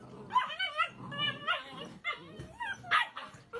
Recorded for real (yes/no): yes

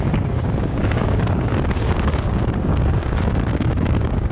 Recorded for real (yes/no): no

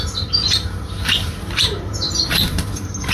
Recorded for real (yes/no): no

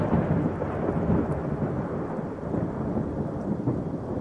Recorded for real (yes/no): no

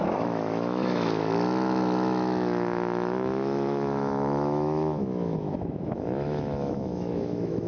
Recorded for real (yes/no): no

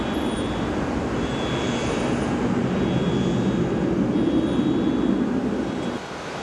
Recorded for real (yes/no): yes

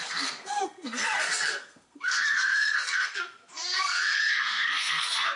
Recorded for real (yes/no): no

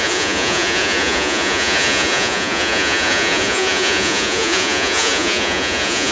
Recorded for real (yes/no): no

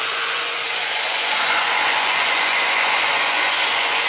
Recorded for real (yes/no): no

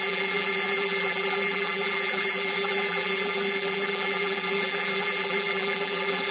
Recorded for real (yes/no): no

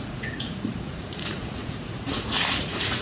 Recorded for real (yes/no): no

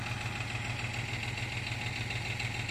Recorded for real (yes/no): yes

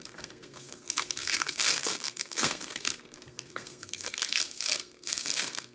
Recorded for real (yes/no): no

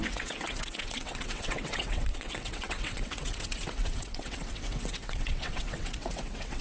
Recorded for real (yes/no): no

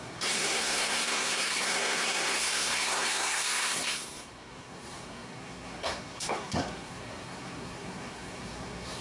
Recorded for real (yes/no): no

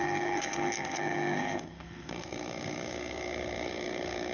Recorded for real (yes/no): no